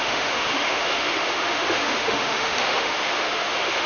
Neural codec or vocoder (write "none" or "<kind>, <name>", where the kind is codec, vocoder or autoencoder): autoencoder, DAC-VAE